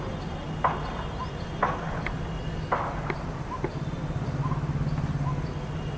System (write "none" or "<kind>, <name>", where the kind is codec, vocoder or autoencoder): none